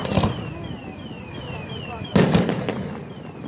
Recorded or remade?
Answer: recorded